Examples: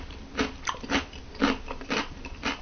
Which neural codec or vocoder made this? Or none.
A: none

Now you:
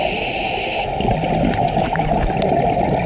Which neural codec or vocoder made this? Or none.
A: none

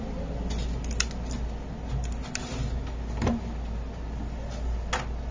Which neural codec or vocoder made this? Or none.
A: none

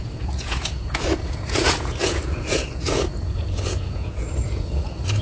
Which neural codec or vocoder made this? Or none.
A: vocoder, Vocos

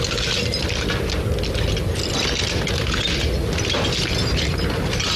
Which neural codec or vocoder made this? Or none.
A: none